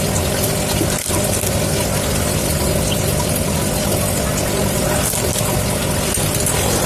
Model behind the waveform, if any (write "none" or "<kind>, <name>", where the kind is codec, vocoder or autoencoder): none